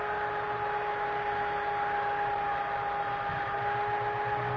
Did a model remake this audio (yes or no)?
no